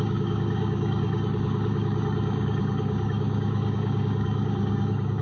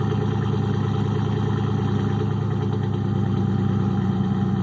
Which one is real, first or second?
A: second